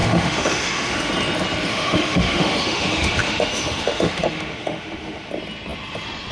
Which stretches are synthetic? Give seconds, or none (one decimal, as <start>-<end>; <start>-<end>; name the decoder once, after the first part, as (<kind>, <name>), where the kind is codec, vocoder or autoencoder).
0.0-1.1 (autoencoder, DAC-VAE); 1.7-5.3